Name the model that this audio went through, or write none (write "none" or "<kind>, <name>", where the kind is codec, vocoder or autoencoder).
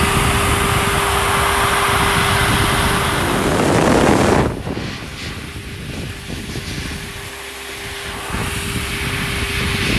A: none